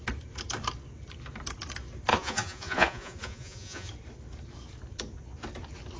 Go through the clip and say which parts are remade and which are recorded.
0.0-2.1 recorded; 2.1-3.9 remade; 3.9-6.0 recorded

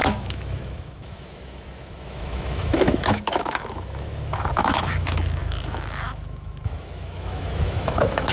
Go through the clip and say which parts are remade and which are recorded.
0.0-8.3 remade

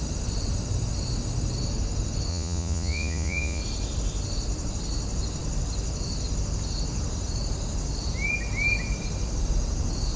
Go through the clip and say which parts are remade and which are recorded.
0.0-2.3 recorded; 2.3-3.6 remade; 3.6-10.2 recorded

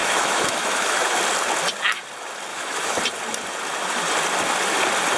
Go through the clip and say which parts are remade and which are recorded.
0.0-1.2 remade; 1.2-2.5 recorded; 2.5-3.0 remade; 3.0-5.2 recorded

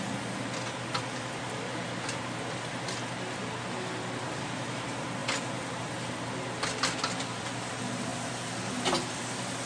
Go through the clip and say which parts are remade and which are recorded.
0.0-9.7 recorded